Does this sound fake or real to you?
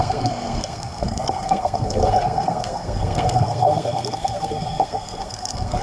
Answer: fake